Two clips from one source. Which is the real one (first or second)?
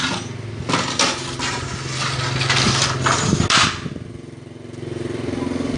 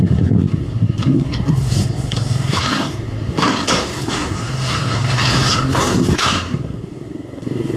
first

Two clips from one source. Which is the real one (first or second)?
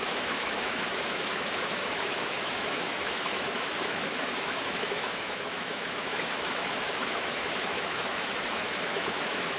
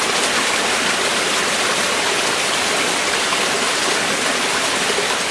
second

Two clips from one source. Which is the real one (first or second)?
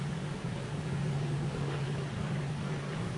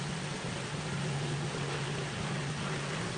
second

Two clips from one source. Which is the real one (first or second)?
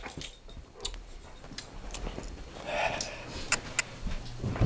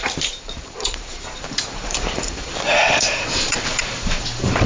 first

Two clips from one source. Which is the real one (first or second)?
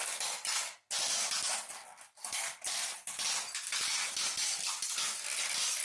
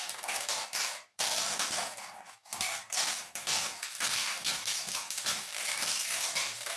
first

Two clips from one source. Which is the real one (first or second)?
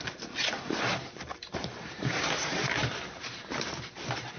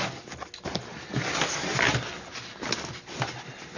second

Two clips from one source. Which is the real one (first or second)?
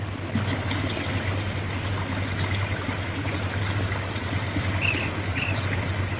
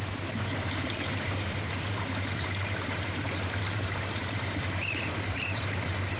first